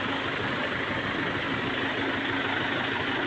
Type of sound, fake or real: real